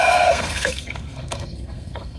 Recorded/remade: remade